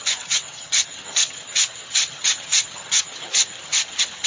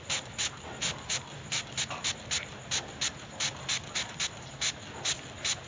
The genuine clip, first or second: second